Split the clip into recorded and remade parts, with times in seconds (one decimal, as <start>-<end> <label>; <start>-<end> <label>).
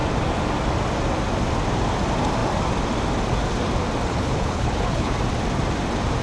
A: 0.0-4.1 recorded; 4.1-5.1 remade; 5.1-6.2 recorded